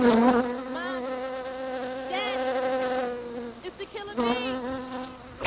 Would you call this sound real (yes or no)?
yes